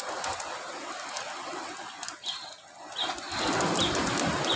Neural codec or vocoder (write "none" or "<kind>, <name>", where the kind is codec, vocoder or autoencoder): none